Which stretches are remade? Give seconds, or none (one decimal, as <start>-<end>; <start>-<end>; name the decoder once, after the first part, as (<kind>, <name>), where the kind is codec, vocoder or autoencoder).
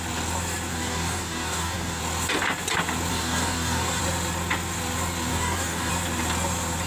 0.7-2.0 (codec, DAC); 3.1-4.0; 5.3-5.9